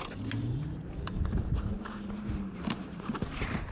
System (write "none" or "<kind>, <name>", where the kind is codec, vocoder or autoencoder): vocoder, BigVGAN v2